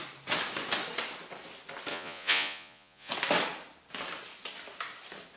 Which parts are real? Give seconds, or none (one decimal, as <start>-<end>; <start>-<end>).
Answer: 0.0-1.9; 3.1-5.4

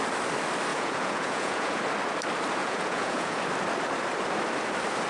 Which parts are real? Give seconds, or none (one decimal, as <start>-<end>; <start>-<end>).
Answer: 0.0-0.7; 1.8-2.6; 3.4-5.1

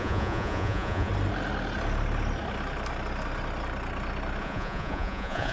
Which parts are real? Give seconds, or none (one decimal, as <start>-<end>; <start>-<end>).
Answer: 1.1-4.4

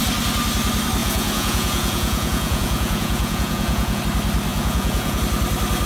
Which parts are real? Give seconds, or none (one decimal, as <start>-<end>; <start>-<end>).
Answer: 0.0-1.0; 4.0-4.5; 5.2-5.9

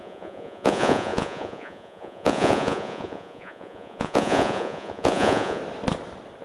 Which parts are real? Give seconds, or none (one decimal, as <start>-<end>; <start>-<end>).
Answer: 5.6-6.4

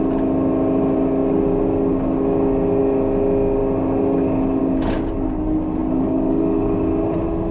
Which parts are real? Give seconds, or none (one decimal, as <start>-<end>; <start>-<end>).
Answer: 0.0-7.5